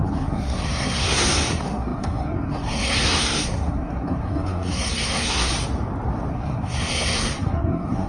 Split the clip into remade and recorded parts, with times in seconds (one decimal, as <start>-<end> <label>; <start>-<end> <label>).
0.0-5.5 remade; 5.5-6.3 recorded; 6.3-8.1 remade